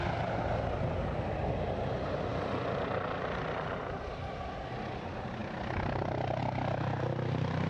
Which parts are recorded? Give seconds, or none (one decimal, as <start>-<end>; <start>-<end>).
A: 0.0-7.7